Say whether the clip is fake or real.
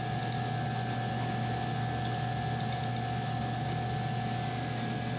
real